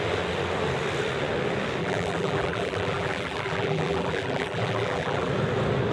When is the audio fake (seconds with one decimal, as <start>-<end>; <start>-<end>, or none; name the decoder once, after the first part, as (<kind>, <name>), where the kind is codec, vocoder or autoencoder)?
1.8-5.3 (vocoder, BigVGAN v2)